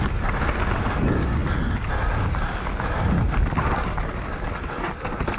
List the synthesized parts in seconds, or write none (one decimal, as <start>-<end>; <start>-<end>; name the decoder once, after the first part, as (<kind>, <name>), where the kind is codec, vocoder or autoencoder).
none